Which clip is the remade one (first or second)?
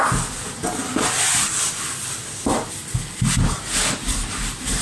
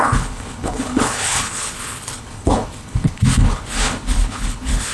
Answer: second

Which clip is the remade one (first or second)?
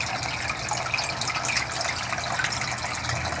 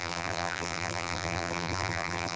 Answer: second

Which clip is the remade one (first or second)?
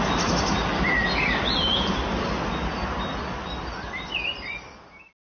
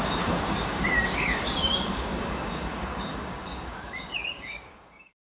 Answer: second